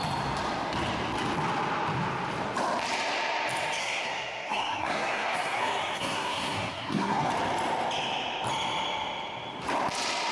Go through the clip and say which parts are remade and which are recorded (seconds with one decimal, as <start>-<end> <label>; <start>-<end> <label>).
0.0-3.8 recorded; 3.8-7.3 remade; 7.3-10.3 recorded